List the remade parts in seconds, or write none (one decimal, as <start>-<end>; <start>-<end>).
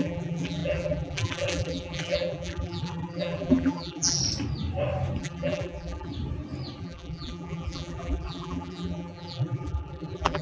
0.0-4.2; 5.2-6.1; 6.8-10.4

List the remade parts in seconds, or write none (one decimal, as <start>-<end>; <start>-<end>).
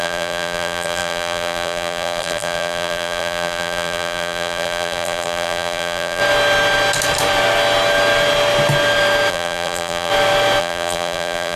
0.0-6.2; 9.3-10.1; 10.6-11.6